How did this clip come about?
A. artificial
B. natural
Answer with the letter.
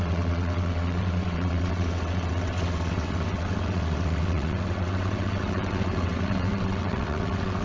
A